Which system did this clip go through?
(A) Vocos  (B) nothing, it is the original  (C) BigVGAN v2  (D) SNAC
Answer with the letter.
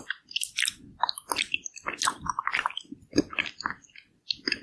B